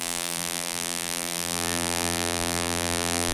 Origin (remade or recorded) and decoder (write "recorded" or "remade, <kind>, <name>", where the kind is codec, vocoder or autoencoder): remade, vocoder, BigVGAN v2